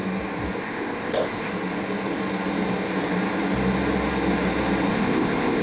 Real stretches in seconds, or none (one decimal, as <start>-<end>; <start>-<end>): 0.0-0.6; 1.5-4.9